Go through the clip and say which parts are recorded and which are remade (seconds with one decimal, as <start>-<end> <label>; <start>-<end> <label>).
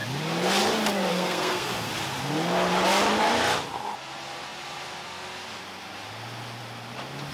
0.0-1.1 recorded; 1.1-1.9 remade; 1.9-7.3 recorded